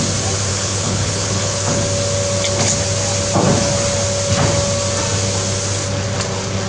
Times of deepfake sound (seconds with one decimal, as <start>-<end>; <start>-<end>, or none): 0.5-1.8